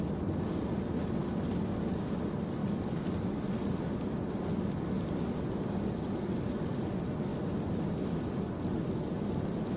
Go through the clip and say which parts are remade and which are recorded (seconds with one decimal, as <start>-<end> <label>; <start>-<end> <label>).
0.0-2.6 recorded; 2.6-3.4 remade; 3.4-9.8 recorded